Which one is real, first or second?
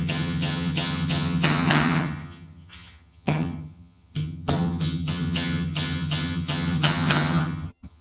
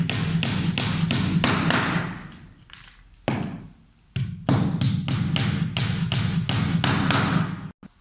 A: second